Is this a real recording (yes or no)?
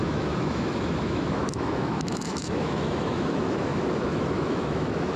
no